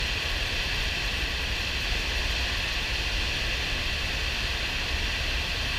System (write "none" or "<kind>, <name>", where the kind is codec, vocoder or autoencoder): none